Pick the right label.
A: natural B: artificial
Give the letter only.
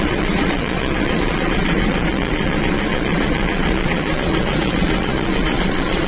B